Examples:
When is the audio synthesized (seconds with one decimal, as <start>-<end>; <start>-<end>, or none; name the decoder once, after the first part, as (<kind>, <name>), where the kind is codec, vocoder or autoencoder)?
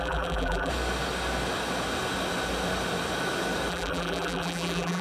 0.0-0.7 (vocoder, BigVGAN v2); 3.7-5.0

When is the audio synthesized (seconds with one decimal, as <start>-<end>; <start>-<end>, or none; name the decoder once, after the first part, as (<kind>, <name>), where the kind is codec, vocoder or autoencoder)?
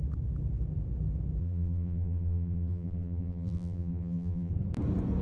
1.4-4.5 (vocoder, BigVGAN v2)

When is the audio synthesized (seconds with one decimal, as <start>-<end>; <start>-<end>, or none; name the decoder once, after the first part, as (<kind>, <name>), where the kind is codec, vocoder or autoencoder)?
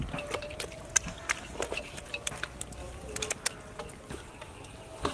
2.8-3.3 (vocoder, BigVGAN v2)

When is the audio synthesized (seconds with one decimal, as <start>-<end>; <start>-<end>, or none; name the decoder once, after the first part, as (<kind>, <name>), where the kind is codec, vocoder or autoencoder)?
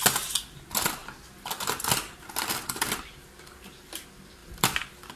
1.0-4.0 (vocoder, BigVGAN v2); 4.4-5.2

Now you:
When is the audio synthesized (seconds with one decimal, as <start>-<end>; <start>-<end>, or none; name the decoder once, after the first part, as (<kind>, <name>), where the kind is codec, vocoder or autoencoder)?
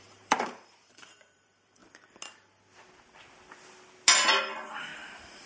0.0-1.8 (vocoder, BigVGAN v2); 4.4-4.9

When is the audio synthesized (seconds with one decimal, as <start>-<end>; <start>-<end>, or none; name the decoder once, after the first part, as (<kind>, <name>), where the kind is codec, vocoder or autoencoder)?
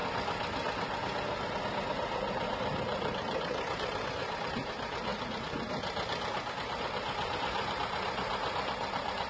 1.6-5.1 (vocoder, BigVGAN v2); 6.5-9.3